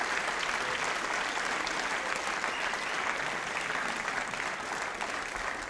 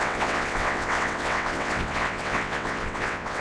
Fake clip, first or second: second